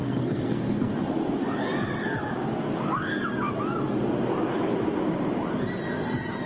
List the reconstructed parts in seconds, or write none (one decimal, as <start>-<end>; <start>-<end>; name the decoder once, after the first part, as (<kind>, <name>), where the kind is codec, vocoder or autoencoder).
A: 0.0-0.9 (codec, SNAC)